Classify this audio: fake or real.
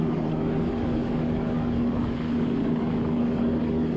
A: fake